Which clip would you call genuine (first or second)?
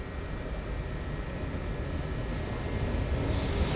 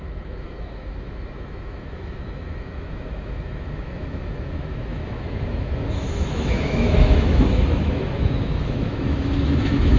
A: first